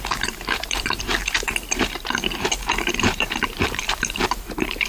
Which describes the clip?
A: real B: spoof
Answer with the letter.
B